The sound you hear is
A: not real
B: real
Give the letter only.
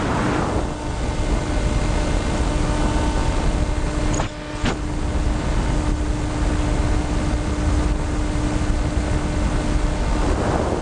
B